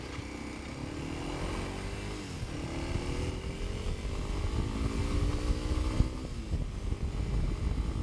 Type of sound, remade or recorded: recorded